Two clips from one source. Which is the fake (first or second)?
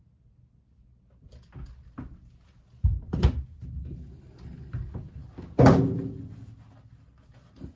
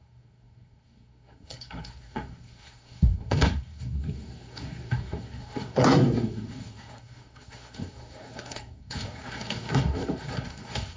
second